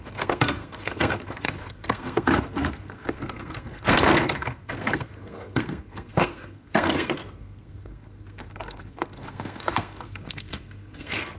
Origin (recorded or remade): remade